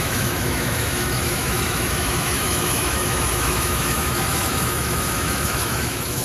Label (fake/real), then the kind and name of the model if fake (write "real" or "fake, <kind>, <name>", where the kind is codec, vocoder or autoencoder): fake, autoencoder, DAC-VAE